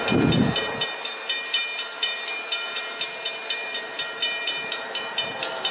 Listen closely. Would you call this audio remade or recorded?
remade